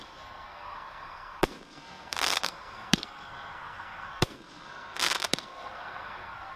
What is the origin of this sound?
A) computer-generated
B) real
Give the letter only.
A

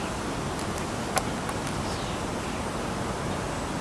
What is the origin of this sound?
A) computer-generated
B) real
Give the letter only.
B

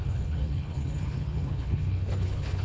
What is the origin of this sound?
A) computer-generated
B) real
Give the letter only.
A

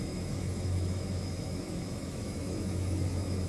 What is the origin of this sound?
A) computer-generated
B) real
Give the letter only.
A